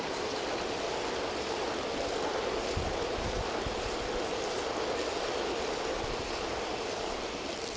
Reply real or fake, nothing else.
real